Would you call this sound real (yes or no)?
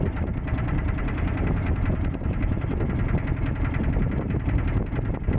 yes